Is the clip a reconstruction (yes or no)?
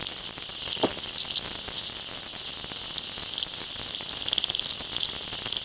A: no